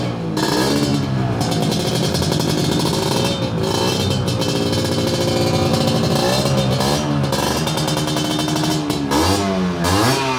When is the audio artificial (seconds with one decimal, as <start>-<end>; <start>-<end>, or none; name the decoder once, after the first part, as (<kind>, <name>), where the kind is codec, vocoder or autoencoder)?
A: none